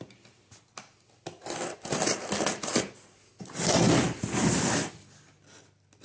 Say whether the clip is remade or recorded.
recorded